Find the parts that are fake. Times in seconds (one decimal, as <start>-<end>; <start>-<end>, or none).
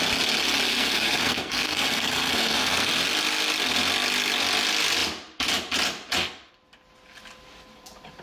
0.7-2.9